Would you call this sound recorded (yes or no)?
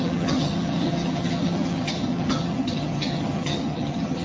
no